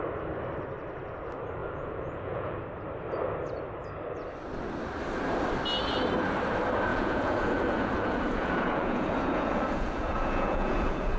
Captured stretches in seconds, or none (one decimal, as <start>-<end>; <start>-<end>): 0.0-1.6; 2.6-6.9